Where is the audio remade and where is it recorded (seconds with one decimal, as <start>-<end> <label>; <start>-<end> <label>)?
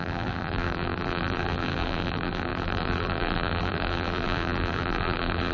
0.0-5.5 remade